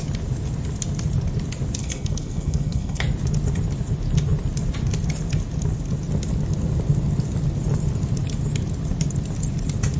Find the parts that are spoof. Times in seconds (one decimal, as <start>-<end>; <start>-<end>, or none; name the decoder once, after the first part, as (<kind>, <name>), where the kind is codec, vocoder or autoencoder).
1.8-3.0 (codec, SNAC)